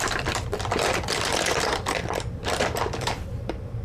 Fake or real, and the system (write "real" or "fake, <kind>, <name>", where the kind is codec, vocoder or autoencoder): fake, vocoder, BigVGAN v2